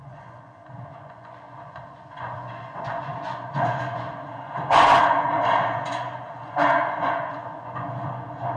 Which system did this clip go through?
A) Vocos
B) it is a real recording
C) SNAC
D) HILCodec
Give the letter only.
A